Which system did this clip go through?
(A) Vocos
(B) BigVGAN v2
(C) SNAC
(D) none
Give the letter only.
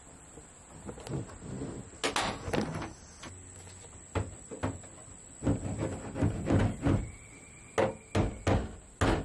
D